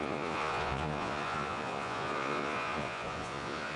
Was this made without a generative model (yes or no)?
no